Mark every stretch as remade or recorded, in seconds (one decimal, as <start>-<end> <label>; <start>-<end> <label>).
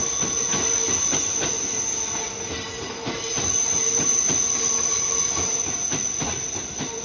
0.0-7.0 recorded